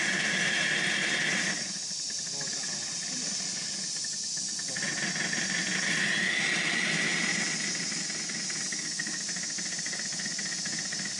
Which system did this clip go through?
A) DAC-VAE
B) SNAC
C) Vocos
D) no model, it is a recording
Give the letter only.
D